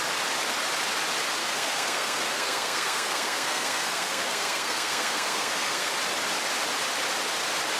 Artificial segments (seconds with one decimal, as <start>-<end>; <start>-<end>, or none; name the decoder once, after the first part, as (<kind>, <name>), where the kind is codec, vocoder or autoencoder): 1.4-5.9 (codec, SNAC)

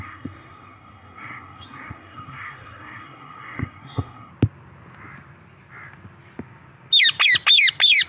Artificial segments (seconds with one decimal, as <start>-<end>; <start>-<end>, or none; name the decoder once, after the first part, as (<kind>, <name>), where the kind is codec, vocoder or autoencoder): 0.0-4.3 (codec, SNAC)

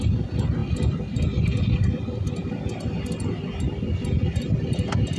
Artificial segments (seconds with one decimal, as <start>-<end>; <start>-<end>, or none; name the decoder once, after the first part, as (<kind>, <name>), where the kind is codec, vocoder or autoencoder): none

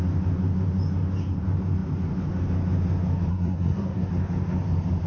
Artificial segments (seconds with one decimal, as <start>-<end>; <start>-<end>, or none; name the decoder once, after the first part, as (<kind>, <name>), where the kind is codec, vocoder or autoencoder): 3.3-4.1 (codec, SNAC)

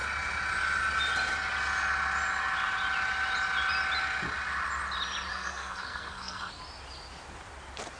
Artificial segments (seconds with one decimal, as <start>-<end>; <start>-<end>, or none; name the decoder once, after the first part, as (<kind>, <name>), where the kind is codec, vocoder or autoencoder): 5.3-6.6 (codec, SNAC)

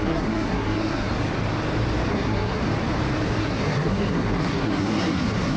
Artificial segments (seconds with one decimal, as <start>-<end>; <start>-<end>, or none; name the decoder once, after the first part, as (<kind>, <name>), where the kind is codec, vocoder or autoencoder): 0.0-1.1 (codec, SNAC); 2.1-2.6; 3.4-5.6

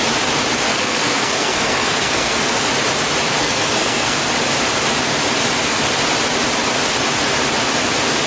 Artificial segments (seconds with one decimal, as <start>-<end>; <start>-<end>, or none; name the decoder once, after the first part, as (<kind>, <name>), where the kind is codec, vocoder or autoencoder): 0.7-2.7 (codec, SNAC); 3.4-4.2